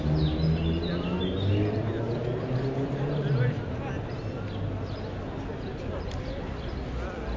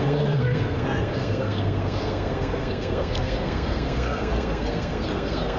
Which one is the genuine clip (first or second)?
first